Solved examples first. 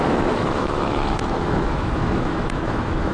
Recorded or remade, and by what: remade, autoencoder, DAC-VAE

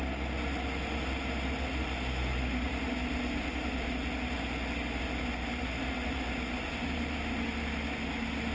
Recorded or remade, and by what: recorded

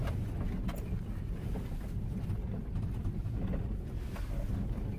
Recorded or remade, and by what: recorded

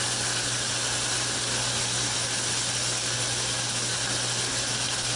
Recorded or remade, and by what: recorded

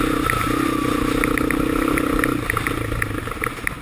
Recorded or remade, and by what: recorded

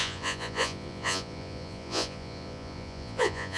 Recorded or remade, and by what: remade, vocoder, Vocos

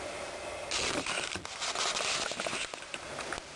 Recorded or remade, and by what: recorded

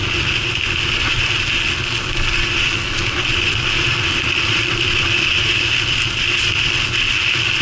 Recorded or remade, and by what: recorded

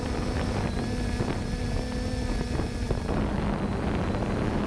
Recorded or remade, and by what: recorded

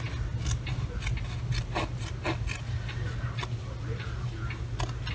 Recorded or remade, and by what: recorded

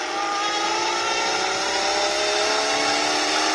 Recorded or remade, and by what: recorded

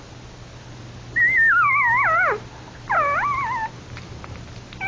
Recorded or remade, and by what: recorded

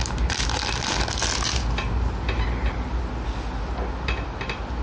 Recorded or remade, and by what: recorded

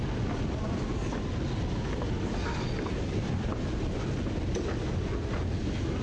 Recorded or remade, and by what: recorded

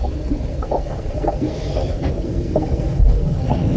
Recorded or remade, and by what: remade, codec, SNAC